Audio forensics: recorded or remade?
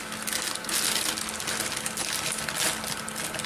recorded